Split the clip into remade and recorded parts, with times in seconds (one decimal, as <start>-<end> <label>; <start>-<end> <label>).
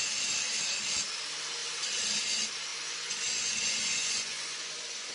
0.0-2.7 recorded; 2.7-5.1 remade